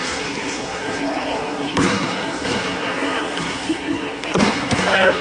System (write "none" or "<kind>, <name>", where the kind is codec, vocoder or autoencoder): codec, SNAC